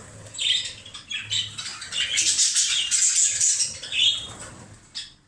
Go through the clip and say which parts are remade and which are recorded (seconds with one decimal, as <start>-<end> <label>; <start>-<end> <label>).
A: 0.0-5.3 recorded